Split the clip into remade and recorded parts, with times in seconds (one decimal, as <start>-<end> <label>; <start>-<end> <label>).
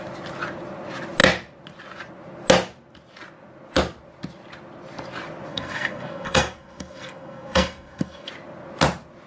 0.0-5.5 recorded; 5.5-8.3 remade; 8.3-9.3 recorded